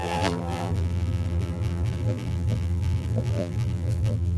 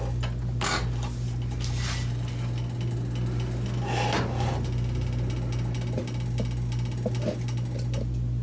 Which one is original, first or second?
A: second